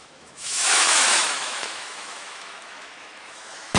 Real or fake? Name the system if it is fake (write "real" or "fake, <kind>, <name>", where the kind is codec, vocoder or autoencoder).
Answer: fake, autoencoder, DAC-VAE